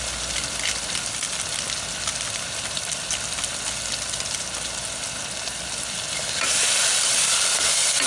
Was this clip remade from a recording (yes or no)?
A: no